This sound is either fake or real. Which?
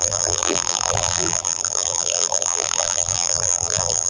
fake